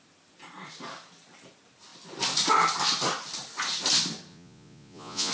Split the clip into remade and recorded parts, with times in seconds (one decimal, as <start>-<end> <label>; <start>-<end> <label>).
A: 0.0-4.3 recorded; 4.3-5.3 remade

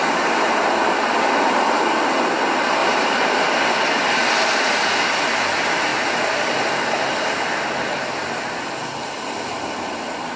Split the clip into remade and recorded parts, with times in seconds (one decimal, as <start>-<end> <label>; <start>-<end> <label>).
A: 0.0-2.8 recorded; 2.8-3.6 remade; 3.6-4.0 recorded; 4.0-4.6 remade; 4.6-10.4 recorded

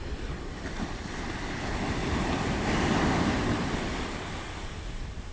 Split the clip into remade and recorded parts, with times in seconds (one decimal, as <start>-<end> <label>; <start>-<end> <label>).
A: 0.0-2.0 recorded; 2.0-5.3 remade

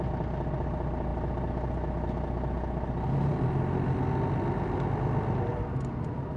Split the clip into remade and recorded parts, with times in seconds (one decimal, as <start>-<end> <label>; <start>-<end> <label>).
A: 0.0-6.4 recorded

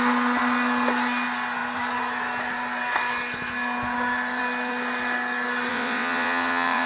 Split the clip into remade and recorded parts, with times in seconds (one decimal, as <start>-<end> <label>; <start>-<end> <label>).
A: 0.0-5.7 recorded; 5.7-6.9 remade